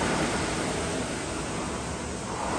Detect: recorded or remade recorded